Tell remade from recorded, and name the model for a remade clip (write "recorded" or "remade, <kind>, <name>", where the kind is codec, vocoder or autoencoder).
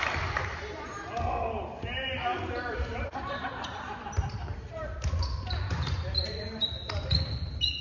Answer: remade, vocoder, BigVGAN v2